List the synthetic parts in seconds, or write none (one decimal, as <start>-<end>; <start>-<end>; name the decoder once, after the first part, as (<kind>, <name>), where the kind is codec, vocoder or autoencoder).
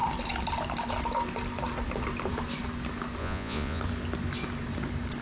3.2-3.8 (vocoder, Vocos)